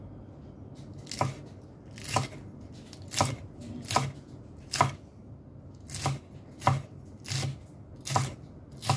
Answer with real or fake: real